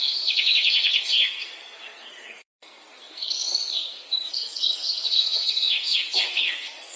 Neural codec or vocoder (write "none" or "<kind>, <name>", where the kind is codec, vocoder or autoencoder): codec, SNAC